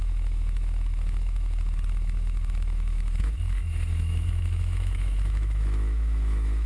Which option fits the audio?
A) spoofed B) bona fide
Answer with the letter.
A